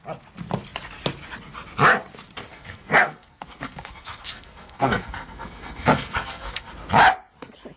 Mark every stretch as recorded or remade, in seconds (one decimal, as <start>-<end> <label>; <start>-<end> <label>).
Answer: 0.0-2.5 recorded; 2.5-6.7 remade; 6.7-7.8 recorded